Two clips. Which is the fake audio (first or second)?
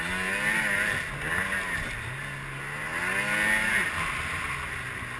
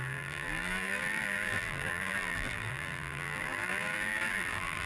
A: second